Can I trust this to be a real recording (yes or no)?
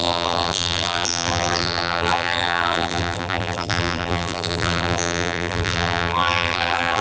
no